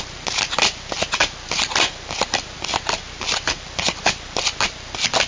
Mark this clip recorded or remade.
recorded